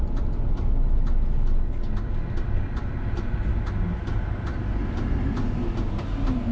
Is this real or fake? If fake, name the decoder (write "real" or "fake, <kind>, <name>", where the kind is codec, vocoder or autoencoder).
real